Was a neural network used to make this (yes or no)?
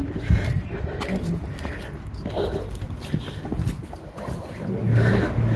no